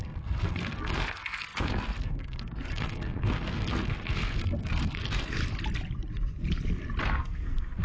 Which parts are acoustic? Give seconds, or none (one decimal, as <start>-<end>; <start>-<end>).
5.4-7.0

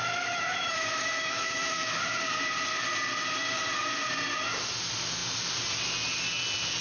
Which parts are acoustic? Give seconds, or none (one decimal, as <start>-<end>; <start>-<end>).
2.0-6.8

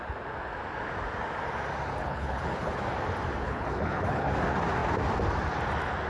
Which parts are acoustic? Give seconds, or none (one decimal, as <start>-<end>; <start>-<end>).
0.0-2.0; 2.8-3.4; 4.3-6.1

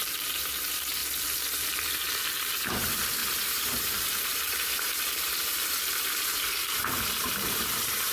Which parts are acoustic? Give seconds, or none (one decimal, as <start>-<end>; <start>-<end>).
1.0-2.7

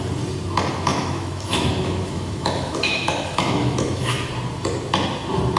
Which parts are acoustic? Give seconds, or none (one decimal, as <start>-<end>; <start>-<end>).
0.0-0.9; 4.3-5.6